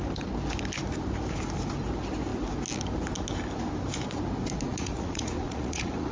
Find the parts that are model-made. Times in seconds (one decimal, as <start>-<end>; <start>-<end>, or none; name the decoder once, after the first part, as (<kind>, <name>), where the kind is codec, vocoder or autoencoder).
4.7-6.1 (vocoder, Vocos)